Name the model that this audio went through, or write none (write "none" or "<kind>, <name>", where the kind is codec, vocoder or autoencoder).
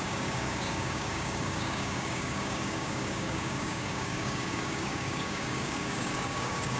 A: codec, DAC